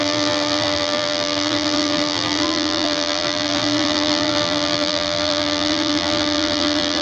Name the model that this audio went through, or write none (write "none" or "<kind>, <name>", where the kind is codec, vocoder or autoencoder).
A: vocoder, BigVGAN v2